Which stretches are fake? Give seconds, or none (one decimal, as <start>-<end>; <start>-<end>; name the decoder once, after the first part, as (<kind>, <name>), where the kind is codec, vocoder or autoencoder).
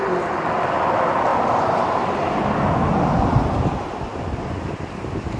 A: none